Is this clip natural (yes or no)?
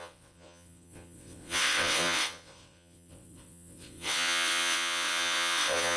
no